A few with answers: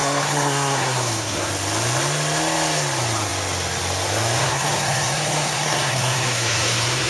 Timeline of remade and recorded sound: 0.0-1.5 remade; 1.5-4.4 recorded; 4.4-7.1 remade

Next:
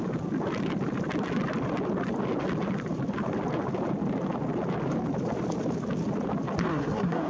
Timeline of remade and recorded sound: 0.0-6.7 recorded; 6.7-7.3 remade

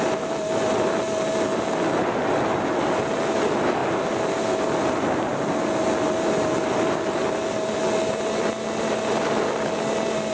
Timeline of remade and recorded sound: 0.0-10.3 recorded

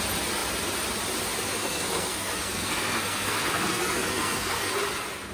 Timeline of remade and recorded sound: 0.0-1.5 recorded; 1.5-4.7 remade; 4.7-5.3 recorded

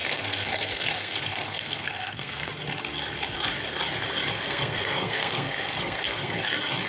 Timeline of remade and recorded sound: 0.0-2.5 remade; 2.5-4.3 recorded; 4.3-6.4 remade; 6.4-6.9 recorded

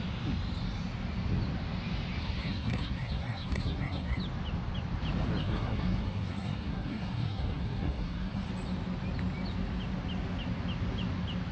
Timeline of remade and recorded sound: 0.0-2.2 recorded; 2.2-4.2 remade; 4.2-5.4 recorded; 5.4-8.5 remade; 8.5-11.5 recorded

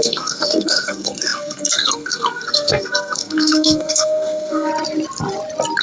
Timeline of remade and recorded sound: 0.0-4.7 remade; 4.7-5.8 recorded

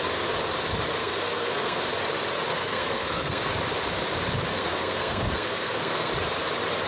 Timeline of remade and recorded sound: 0.0-1.0 recorded; 1.0-1.8 remade; 1.8-2.5 recorded; 2.5-3.5 remade; 3.5-4.5 recorded; 4.5-6.1 remade; 6.1-6.9 recorded